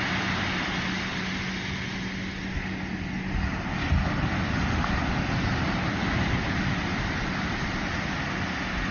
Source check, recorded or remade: recorded